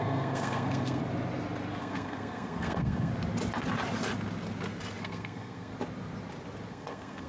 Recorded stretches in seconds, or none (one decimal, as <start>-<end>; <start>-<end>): 1.0-1.8; 3.1-5.0; 5.7-6.7